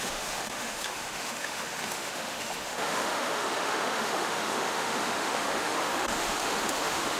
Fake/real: fake